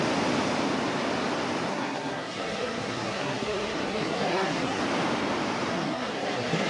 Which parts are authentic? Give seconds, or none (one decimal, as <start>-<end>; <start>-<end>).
0.0-1.7; 4.8-5.7